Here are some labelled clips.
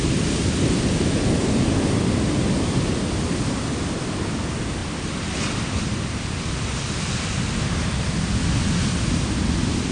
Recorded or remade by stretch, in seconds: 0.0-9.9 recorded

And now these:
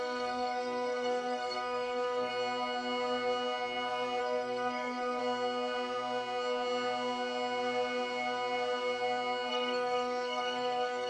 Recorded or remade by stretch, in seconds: 0.0-2.3 remade; 2.3-4.2 recorded; 4.2-5.2 remade; 5.2-9.5 recorded; 9.5-11.1 remade

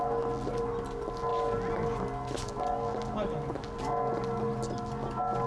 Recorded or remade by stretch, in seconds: 0.0-5.5 recorded

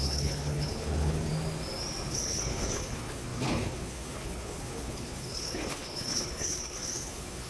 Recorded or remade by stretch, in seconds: 0.0-1.3 remade; 1.3-2.1 recorded; 2.1-7.5 remade

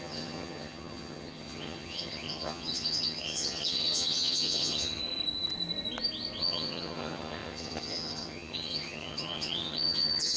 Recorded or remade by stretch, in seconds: 0.0-5.0 remade; 5.0-6.4 recorded; 6.4-10.4 remade

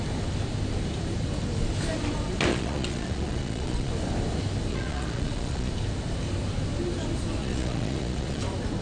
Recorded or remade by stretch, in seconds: 0.0-2.5 recorded; 2.5-3.9 remade; 3.9-4.7 recorded; 4.7-5.7 remade; 5.7-7.4 recorded; 7.4-8.4 remade; 8.4-8.8 recorded